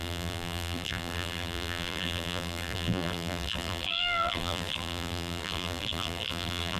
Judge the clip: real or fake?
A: fake